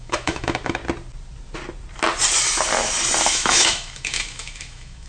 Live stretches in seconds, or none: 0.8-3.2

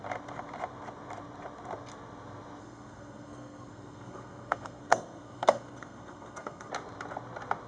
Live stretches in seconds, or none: 0.0-2.6; 6.7-7.7

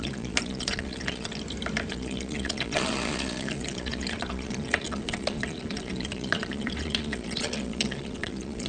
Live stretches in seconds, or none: 1.3-1.9

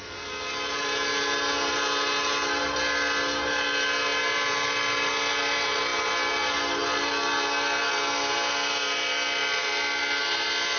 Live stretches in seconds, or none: 0.0-10.8

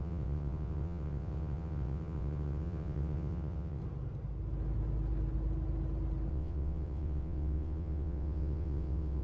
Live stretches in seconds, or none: 3.8-6.3

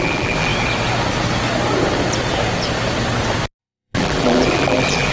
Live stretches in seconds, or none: 0.5-3.6

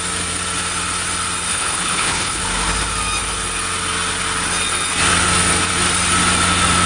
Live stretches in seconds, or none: 0.0-1.5; 2.4-6.9

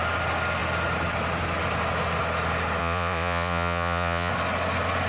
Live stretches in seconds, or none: 0.0-2.8; 4.3-5.1